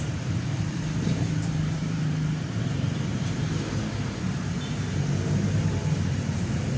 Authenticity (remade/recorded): remade